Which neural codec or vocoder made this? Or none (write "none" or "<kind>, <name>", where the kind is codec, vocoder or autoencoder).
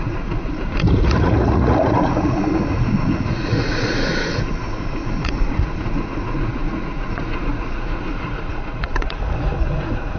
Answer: vocoder, Vocos